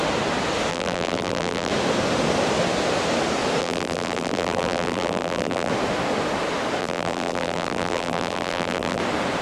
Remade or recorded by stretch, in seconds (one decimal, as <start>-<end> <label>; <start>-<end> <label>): 0.0-0.7 recorded; 0.7-1.7 remade; 1.7-3.6 recorded; 3.6-5.7 remade; 5.7-6.8 recorded; 6.8-9.0 remade; 9.0-9.4 recorded